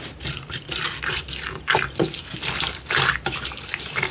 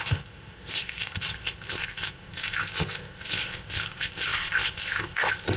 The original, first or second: first